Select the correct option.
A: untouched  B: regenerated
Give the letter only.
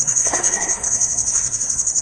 B